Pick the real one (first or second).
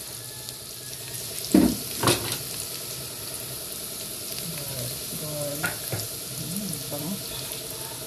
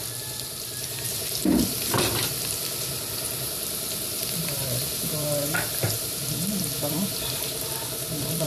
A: first